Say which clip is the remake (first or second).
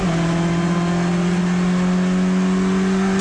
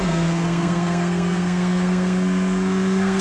second